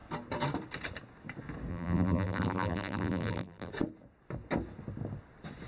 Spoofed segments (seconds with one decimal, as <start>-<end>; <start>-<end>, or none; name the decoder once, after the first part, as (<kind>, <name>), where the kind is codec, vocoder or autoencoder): 1.7-3.7 (vocoder, BigVGAN v2)